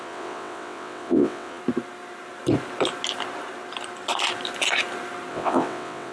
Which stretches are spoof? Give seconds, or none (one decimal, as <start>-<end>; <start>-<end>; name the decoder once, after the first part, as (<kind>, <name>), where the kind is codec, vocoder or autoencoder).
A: 0.0-1.6 (vocoder, WaveNeXt); 5.3-6.1